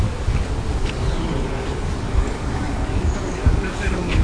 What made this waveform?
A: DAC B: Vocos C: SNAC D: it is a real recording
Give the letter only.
A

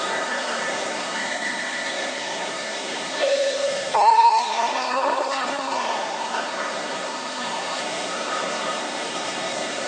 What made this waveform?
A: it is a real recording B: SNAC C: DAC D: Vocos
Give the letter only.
B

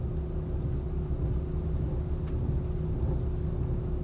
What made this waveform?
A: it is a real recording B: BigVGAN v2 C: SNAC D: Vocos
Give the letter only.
A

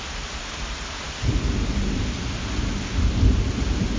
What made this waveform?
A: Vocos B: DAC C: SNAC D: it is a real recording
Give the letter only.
D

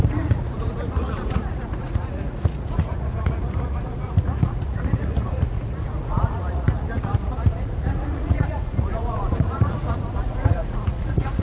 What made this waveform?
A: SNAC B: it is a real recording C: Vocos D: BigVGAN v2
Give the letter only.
C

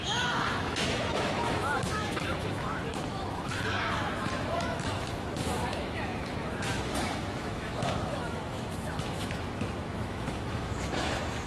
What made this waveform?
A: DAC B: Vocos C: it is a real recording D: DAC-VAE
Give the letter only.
D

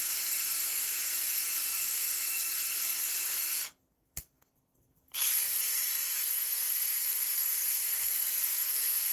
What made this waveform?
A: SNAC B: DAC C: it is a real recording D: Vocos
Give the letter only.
A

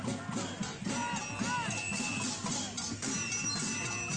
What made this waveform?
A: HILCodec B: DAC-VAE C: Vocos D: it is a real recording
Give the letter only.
D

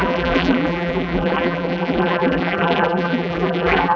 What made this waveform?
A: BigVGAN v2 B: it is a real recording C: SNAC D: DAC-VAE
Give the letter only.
A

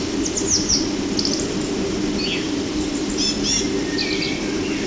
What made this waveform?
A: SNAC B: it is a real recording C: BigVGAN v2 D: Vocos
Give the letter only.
B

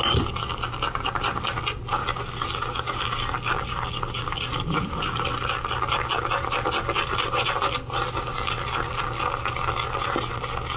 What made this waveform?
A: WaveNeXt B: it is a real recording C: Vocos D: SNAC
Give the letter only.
B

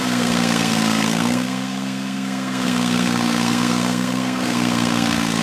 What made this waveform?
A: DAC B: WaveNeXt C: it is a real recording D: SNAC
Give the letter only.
D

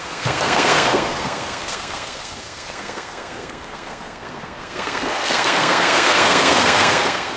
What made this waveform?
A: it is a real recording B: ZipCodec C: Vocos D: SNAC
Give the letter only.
D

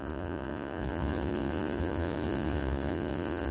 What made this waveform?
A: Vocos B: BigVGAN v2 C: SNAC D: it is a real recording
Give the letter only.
A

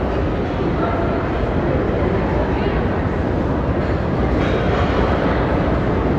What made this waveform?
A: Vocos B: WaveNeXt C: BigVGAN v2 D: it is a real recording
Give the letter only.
D